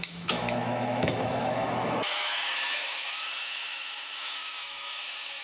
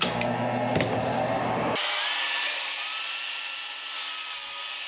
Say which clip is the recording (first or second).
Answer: second